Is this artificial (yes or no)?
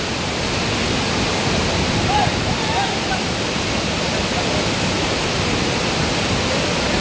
no